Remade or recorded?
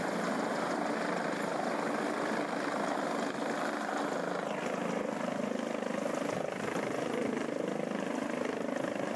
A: recorded